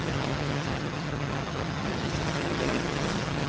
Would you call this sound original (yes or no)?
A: no